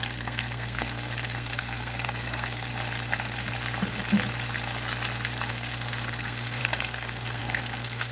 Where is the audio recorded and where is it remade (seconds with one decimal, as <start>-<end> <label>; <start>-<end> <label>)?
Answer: 0.0-2.7 remade; 2.7-5.5 recorded; 5.5-8.1 remade